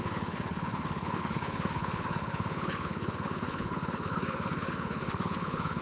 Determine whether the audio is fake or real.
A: fake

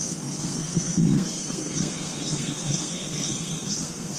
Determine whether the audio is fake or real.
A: fake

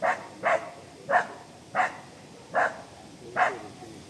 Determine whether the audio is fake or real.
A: real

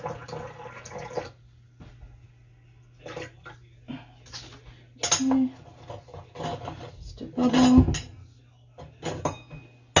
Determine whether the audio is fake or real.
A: real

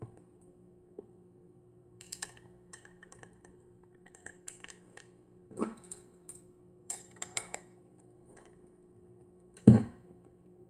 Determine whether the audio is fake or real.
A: fake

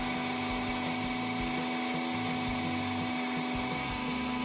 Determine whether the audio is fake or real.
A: real